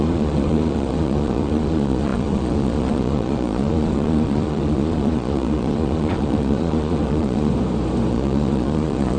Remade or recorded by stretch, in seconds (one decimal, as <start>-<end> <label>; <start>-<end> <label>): 0.0-7.5 remade; 7.5-8.1 recorded; 8.1-9.2 remade